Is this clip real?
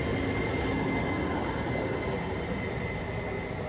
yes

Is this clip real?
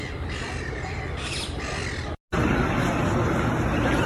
yes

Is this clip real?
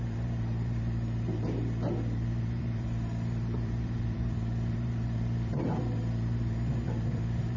no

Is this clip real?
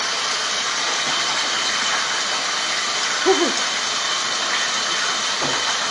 yes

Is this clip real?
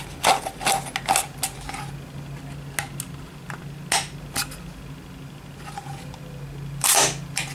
yes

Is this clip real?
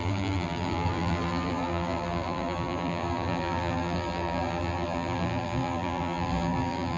no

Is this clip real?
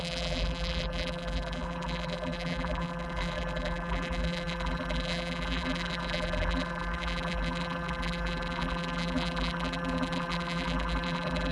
no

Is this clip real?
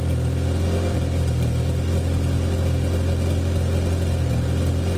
yes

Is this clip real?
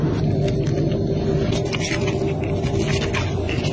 yes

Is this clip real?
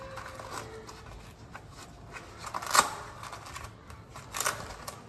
yes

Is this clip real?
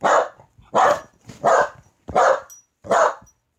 yes